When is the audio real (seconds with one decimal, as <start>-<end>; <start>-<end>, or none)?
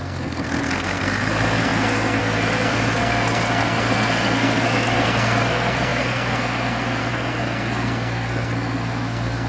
none